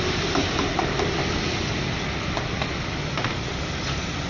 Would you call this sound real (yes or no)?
yes